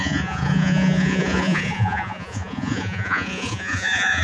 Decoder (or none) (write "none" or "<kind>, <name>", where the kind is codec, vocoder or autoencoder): vocoder, Vocos